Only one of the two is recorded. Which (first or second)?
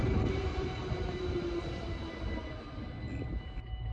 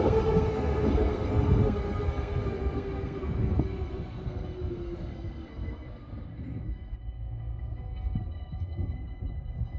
first